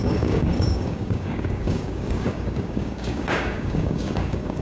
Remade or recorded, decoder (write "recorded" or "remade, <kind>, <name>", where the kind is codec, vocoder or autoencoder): remade, codec, DAC